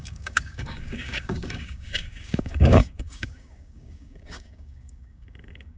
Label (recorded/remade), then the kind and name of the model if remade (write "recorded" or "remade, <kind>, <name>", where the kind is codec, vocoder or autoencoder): remade, codec, DAC